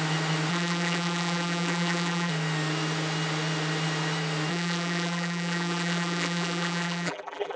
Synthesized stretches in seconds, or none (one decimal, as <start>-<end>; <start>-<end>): 0.5-2.3; 4.5-7.6